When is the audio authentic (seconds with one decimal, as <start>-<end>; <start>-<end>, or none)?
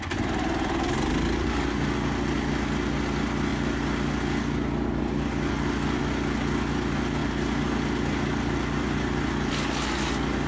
0.0-10.5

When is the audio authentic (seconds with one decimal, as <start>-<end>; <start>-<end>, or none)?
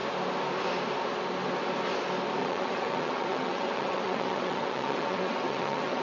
0.0-2.4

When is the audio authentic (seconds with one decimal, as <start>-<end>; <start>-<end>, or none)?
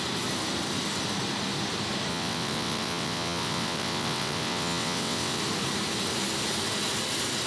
0.0-2.1; 5.4-7.5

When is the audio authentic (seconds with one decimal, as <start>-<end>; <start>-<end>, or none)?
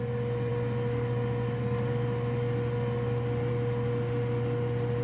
0.0-5.0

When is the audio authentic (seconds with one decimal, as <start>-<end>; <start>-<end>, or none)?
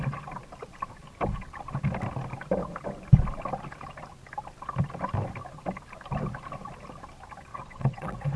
0.0-7.5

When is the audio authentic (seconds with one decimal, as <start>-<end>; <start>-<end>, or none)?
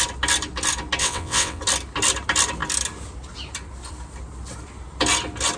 0.0-1.0; 1.6-5.6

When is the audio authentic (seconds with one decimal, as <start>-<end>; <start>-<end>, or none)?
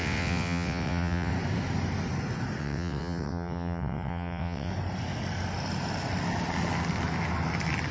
1.3-2.6; 4.7-7.9